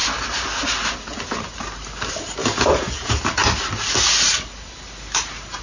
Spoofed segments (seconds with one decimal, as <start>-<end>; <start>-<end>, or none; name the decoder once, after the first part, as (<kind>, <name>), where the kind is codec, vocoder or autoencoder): 2.4-3.1 (vocoder, Vocos)